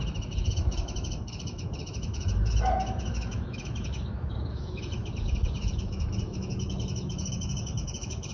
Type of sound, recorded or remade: remade